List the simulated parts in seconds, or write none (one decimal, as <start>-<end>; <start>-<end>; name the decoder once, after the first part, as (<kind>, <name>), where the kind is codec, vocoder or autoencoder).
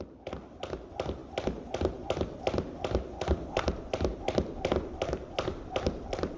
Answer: none